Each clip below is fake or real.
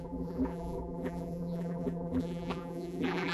fake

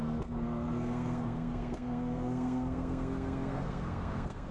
fake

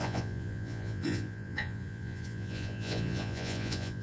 fake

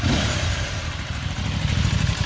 fake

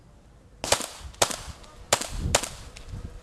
real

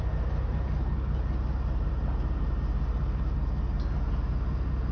real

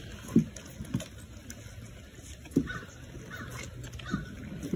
real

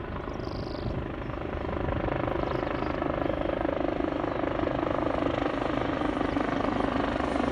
real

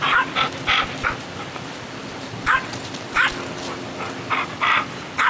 fake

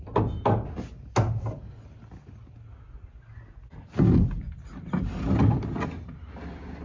real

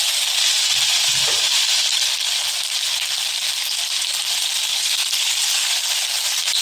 real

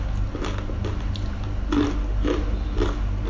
real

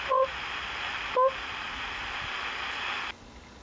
real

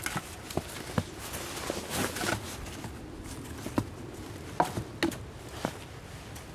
real